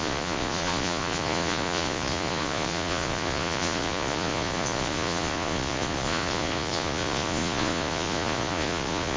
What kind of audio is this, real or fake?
fake